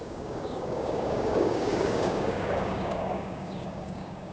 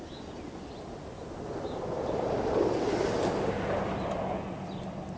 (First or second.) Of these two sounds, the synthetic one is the first